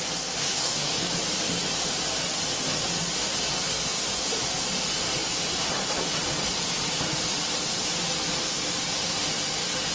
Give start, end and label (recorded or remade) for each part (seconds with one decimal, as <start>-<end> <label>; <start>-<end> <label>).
0.0-0.4 recorded; 0.4-1.1 remade; 1.1-9.9 recorded